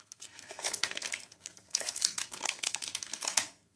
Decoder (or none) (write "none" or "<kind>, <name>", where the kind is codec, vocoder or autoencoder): codec, SNAC